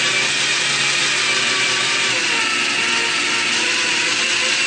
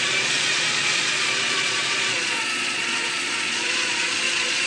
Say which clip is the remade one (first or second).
second